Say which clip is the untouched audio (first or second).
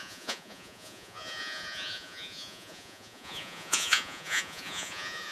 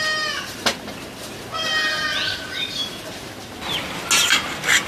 second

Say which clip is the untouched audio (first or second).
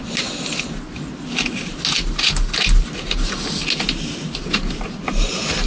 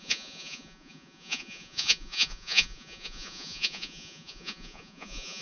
first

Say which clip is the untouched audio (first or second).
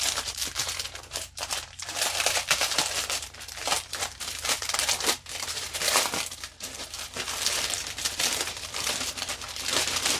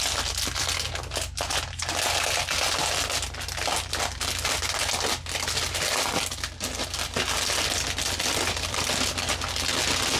second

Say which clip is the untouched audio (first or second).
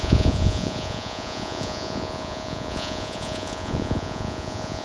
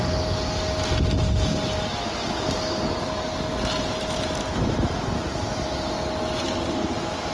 second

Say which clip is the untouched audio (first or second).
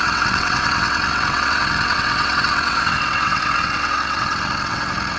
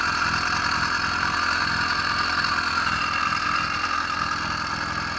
second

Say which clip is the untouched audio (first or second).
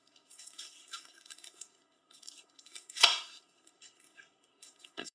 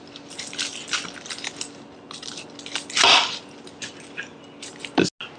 second